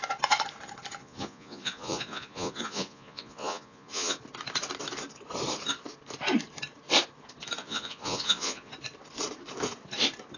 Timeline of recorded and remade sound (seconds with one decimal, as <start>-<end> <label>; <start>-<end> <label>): 0.0-1.0 recorded; 1.0-4.2 remade; 4.2-7.6 recorded; 7.6-8.7 remade; 8.7-10.4 recorded

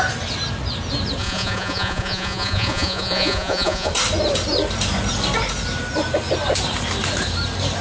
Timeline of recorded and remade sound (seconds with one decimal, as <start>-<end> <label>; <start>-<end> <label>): 0.0-1.2 recorded; 1.2-3.9 remade; 3.9-7.8 recorded

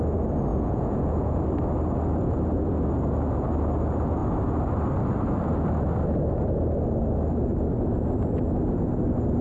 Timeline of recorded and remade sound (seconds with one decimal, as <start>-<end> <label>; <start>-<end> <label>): 0.0-0.5 recorded; 0.5-1.4 remade; 1.4-9.4 recorded

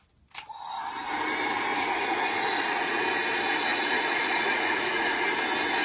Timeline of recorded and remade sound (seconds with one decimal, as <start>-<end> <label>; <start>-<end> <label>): 0.0-1.7 recorded; 1.7-3.0 remade; 3.0-3.7 recorded; 3.7-5.2 remade; 5.2-5.8 recorded